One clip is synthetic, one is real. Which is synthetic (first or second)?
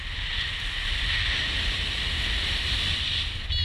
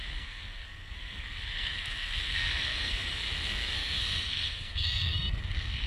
second